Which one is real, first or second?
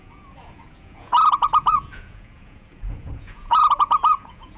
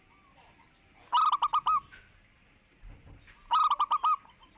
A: second